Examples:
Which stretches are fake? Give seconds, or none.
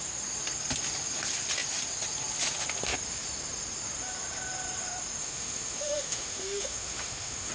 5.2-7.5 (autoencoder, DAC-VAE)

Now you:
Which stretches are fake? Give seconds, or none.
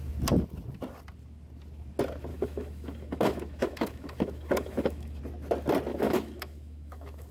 2.3-5.2 (autoencoder, DAC-VAE); 5.9-7.3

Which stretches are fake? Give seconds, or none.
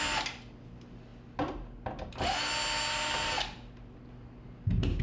none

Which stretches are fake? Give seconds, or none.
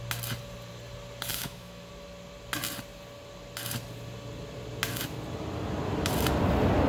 1.3-1.9 (autoencoder, DAC-VAE)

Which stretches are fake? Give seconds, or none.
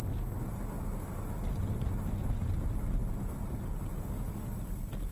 none